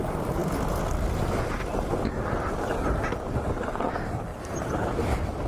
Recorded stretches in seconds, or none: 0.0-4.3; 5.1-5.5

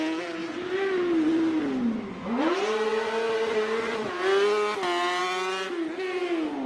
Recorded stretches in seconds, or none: 0.0-6.7

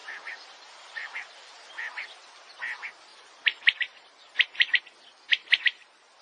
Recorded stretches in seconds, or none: 1.6-3.1; 4.8-6.2